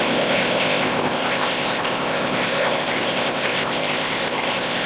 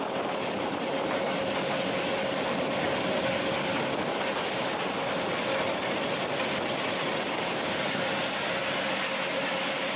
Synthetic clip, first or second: first